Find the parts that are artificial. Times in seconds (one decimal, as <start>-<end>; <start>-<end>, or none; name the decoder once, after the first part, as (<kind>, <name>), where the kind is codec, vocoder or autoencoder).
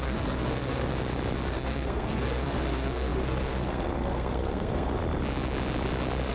0.0-0.9 (codec, SNAC); 1.5-5.0